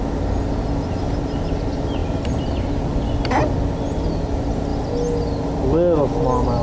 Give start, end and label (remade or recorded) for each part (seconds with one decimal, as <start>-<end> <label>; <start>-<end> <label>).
0.0-6.6 recorded